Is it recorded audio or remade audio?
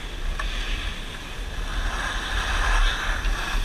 recorded